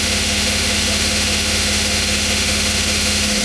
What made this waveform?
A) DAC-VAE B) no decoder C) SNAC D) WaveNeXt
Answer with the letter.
A